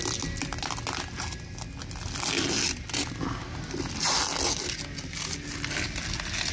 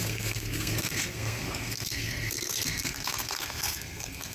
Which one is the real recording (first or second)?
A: first